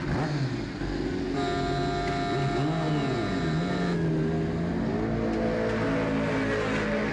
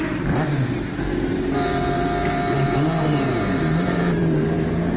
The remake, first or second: second